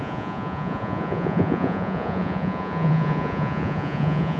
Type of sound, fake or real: fake